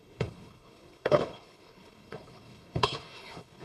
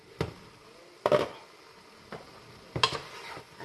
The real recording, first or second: second